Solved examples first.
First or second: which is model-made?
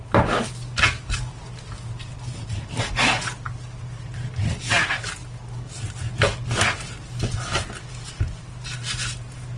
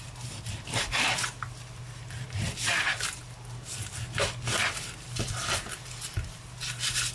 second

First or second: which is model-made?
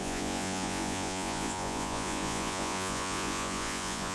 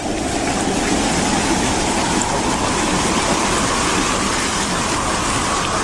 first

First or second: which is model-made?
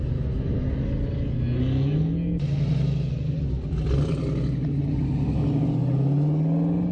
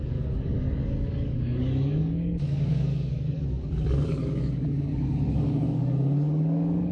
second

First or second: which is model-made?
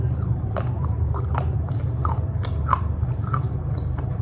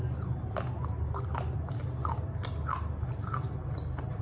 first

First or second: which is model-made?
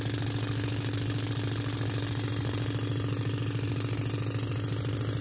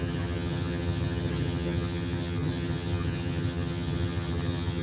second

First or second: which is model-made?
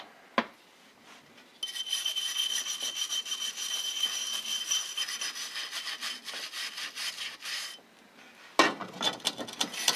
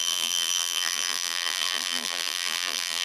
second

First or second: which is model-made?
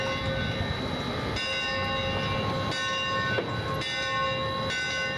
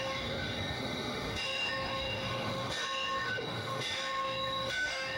second